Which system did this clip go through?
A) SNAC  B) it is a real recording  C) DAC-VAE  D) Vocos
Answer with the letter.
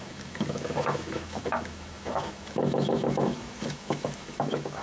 C